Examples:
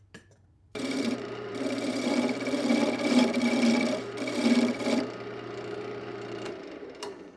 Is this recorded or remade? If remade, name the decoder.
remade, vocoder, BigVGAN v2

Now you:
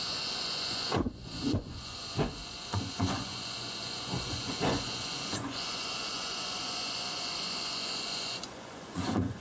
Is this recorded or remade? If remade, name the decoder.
remade, vocoder, Vocos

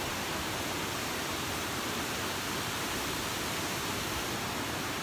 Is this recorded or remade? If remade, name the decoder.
remade, vocoder, BigVGAN v2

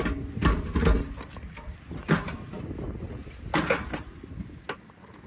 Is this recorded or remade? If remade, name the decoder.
recorded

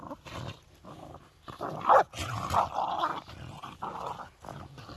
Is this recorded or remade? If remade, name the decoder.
recorded